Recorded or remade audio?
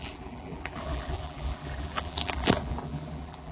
remade